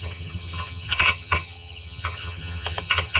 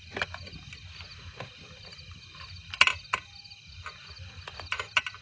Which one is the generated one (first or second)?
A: first